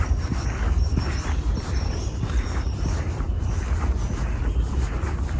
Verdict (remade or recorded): remade